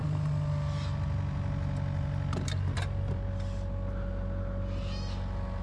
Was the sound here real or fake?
real